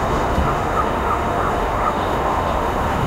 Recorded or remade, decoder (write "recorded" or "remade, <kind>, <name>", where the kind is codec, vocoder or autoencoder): remade, autoencoder, DAC-VAE